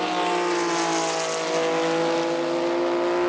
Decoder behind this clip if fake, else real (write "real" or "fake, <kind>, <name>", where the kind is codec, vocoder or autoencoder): real